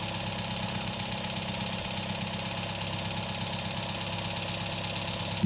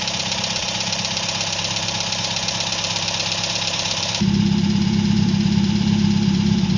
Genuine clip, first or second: first